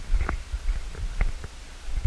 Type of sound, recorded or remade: recorded